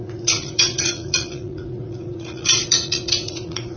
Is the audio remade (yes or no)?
yes